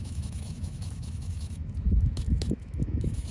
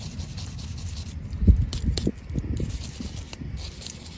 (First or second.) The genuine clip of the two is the second